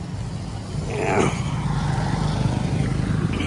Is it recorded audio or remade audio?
recorded